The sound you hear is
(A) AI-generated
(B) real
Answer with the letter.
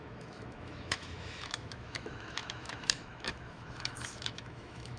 A